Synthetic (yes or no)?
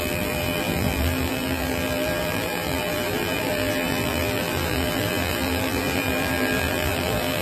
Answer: yes